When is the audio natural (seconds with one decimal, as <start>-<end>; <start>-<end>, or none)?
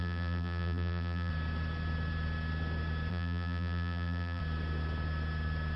1.3-3.1; 4.4-5.8